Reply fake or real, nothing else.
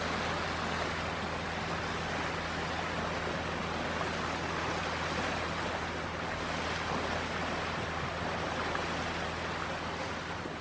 real